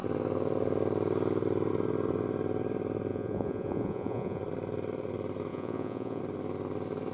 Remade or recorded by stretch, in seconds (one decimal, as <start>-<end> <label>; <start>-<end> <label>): 0.0-3.1 recorded; 3.1-4.4 remade; 4.4-5.5 recorded; 5.5-6.2 remade; 6.2-7.1 recorded